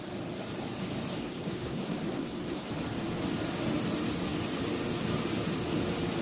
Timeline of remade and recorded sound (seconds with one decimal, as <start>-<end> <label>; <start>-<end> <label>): 0.0-1.2 recorded; 1.2-2.7 remade; 2.7-6.2 recorded